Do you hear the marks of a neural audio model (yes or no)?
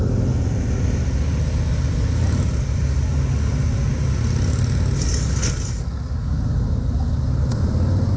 no